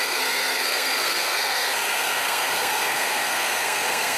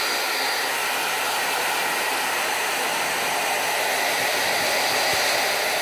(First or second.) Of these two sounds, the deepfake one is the first